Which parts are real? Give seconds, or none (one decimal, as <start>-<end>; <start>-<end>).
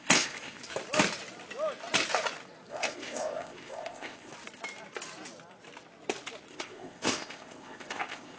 0.6-2.7; 4.3-6.5